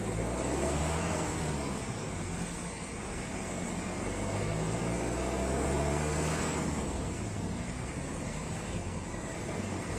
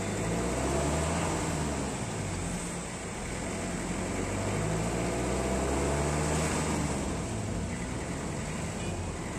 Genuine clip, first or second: second